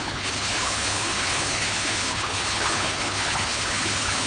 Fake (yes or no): yes